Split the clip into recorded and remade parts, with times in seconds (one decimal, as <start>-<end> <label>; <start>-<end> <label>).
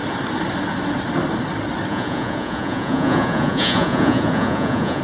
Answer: 0.0-1.9 recorded; 1.9-5.0 remade